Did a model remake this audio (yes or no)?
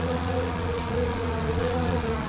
yes